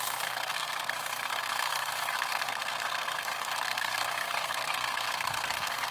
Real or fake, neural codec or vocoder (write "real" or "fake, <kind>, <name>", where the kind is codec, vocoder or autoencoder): fake, codec, SNAC